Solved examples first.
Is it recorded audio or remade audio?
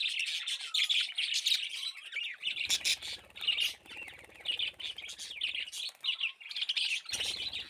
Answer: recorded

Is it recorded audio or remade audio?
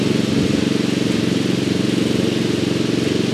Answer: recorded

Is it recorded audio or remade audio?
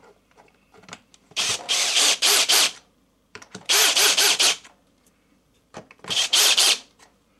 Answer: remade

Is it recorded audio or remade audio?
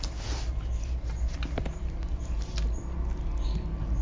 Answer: recorded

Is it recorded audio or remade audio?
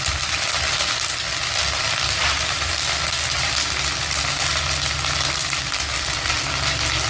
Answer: remade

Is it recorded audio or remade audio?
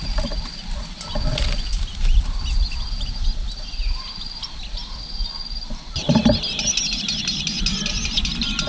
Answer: recorded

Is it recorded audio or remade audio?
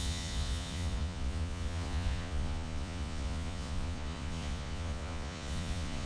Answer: remade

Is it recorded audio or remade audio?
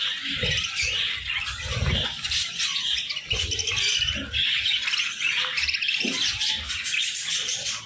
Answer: recorded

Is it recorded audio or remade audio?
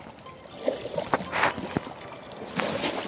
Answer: recorded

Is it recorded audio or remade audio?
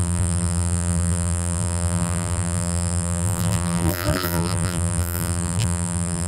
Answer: remade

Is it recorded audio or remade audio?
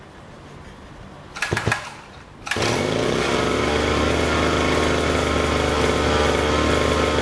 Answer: recorded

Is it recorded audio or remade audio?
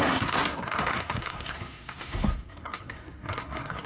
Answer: remade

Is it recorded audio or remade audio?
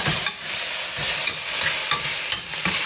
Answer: remade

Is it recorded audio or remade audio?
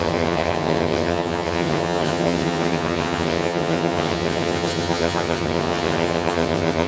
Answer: remade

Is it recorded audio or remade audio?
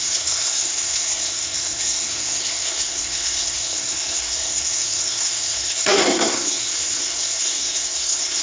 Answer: remade